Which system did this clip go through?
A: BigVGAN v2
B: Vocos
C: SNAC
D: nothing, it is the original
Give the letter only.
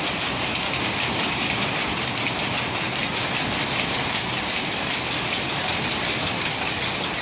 D